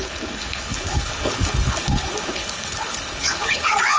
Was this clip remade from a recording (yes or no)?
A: yes